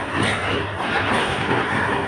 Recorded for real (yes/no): no